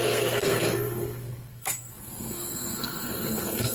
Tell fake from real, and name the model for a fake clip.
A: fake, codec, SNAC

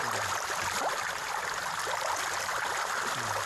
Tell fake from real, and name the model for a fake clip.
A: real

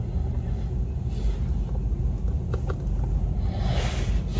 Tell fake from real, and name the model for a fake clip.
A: real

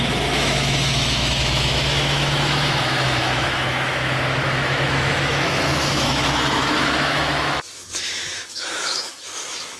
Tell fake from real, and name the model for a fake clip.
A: fake, autoencoder, DAC-VAE